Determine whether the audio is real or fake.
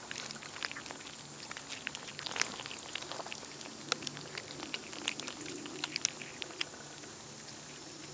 real